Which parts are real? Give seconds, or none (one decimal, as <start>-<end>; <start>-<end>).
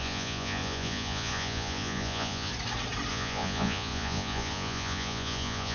2.5-3.1